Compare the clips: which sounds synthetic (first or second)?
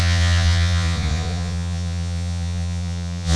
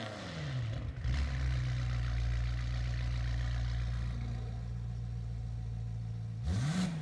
first